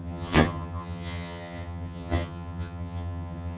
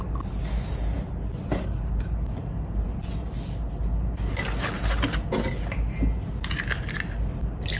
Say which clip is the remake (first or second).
first